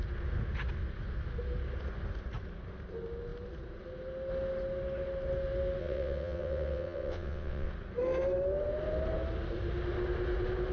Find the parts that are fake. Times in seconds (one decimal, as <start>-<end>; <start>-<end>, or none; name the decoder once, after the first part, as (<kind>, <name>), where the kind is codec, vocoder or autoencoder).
5.8-7.7 (vocoder, WaveNeXt)